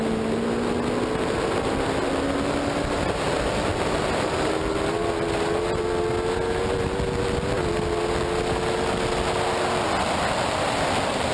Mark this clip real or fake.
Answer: real